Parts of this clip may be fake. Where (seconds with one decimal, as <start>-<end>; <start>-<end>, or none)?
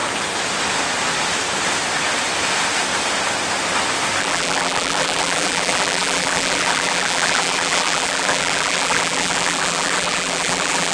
4.2-10.9